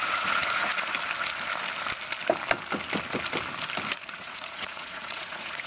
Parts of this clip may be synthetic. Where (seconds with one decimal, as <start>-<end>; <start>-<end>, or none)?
0.0-0.7; 3.9-5.7